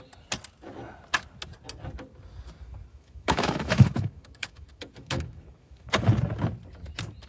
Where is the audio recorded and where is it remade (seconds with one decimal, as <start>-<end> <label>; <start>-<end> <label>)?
0.0-2.9 recorded; 2.9-6.0 remade; 6.0-7.3 recorded